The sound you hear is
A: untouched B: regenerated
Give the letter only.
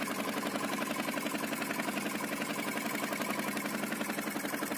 A